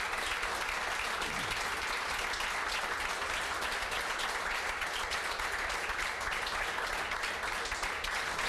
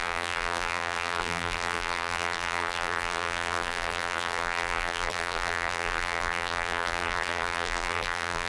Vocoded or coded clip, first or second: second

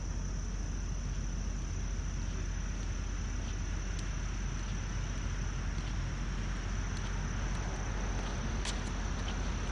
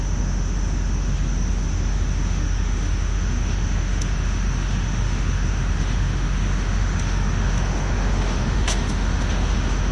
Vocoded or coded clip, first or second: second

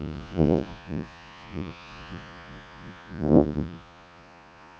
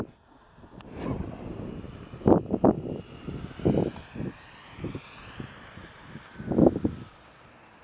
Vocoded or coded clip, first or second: first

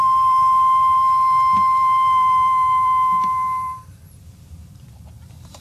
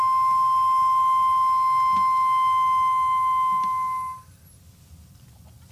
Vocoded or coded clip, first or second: first